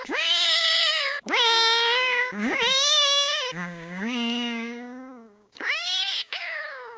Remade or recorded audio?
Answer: remade